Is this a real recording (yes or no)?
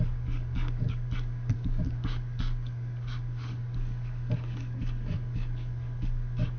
no